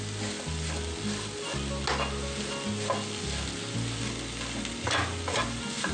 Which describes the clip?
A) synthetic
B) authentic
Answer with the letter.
B